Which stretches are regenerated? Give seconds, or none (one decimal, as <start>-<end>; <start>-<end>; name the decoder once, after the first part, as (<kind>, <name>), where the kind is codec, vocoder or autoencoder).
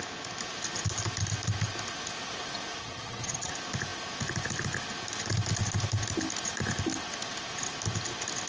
2.8-3.5 (vocoder, HiFi-GAN)